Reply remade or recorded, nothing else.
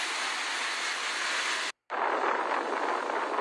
recorded